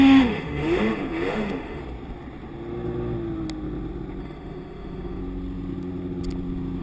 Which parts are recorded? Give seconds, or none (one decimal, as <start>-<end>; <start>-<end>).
1.8-4.2; 5.2-6.8